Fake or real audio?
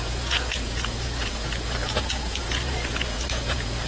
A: fake